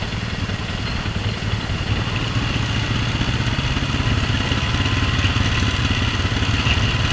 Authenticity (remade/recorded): recorded